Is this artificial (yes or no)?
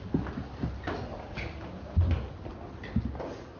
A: no